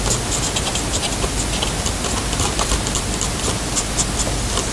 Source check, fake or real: real